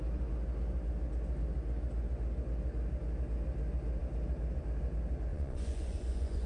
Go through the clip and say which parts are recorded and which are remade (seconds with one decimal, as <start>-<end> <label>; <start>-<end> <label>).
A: 0.0-5.3 recorded; 5.3-6.5 remade